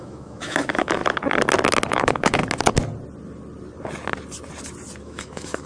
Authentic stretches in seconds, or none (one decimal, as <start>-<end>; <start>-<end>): 1.0-1.9; 2.4-5.0